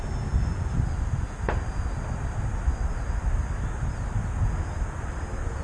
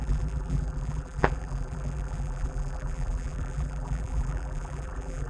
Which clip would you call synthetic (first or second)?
second